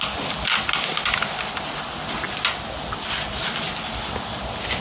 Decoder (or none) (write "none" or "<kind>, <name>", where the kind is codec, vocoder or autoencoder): none